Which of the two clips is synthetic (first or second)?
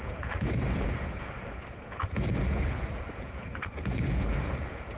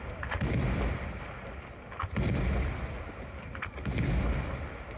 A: first